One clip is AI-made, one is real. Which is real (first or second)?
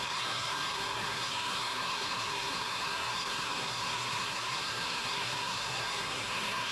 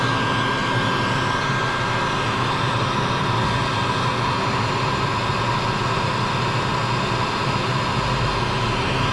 second